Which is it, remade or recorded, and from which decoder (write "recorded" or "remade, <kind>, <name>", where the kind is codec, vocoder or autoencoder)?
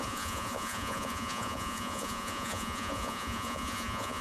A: remade, vocoder, Vocos